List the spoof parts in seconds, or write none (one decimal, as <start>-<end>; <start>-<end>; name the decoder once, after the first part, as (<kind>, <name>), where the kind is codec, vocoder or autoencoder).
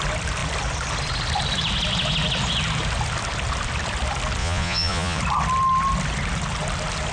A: 4.4-5.2 (vocoder, Vocos)